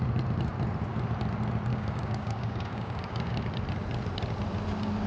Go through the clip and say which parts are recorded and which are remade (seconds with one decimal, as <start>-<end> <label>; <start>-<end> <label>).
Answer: 0.0-1.7 recorded; 1.7-3.4 remade; 3.4-5.1 recorded